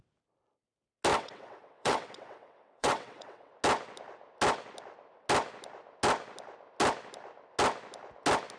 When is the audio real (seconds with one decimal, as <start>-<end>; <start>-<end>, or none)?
0.0-1.1; 3.5-8.6